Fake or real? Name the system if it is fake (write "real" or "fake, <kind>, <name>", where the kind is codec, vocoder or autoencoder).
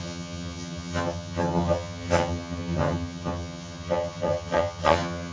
fake, vocoder, HiFi-GAN